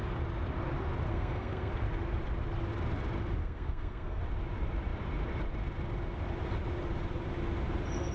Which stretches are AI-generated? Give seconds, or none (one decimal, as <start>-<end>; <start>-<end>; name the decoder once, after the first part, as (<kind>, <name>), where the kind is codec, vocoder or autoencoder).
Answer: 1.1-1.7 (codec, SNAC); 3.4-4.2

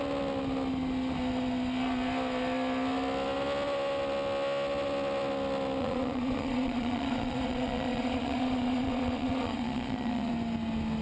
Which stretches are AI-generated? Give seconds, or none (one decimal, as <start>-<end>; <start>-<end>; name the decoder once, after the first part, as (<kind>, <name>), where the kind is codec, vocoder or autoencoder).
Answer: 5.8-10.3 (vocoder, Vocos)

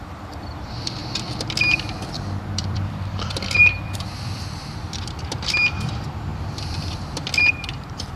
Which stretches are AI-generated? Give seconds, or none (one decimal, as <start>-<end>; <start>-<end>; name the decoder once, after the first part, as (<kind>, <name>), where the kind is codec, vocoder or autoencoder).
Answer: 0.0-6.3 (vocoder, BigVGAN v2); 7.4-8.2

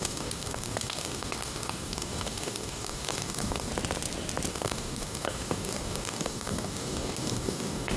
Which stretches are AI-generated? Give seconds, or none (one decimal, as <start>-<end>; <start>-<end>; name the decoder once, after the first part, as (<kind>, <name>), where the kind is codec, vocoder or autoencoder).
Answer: 0.0-3.7 (codec, DAC); 4.5-8.0

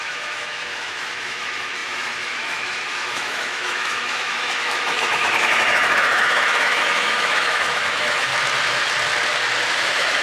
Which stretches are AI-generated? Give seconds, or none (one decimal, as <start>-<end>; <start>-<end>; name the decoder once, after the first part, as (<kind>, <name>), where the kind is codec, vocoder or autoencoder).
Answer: 0.0-8.3 (autoencoder, DAC-VAE); 9.7-10.2

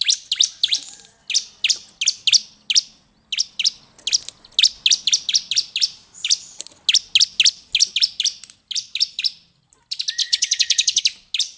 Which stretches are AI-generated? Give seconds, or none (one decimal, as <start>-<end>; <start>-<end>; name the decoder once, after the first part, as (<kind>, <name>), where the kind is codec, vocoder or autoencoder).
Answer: 10.2-11.0 (codec, HILCodec)